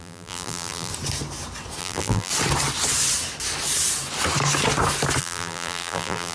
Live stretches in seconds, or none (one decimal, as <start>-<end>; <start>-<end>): 0.9-1.8; 2.3-5.2